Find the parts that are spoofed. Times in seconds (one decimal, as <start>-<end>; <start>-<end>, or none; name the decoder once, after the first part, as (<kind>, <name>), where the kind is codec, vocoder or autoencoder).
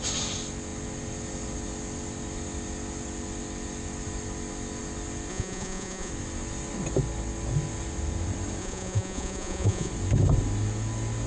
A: 5.3-6.1 (vocoder, Vocos); 8.6-9.9